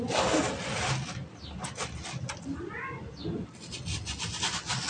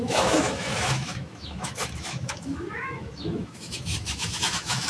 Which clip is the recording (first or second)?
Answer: first